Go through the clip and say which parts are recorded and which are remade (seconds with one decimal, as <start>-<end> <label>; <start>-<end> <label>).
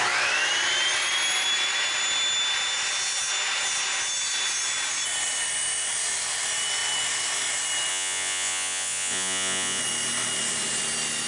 0.0-7.9 recorded; 7.9-9.8 remade; 9.8-11.3 recorded